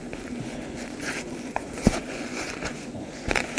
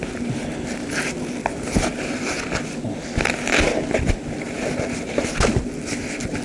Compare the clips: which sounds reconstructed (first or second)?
first